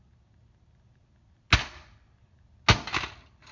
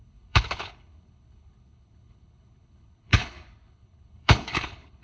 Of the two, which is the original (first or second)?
first